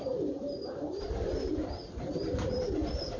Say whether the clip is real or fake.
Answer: fake